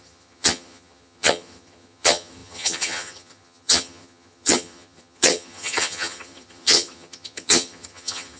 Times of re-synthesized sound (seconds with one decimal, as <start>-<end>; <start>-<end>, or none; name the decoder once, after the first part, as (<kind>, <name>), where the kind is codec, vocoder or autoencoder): 0.0-8.4 (vocoder, HiFi-GAN)